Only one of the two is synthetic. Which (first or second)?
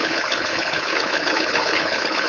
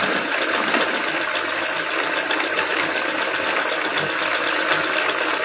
first